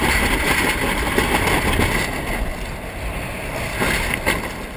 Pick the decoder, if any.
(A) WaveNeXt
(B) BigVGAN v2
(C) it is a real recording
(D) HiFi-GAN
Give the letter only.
C